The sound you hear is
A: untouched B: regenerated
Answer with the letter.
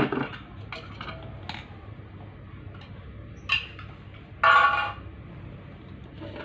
A